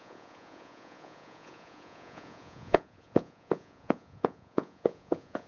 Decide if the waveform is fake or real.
fake